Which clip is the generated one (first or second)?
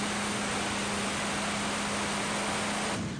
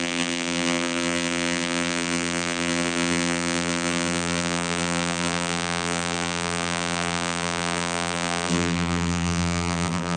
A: second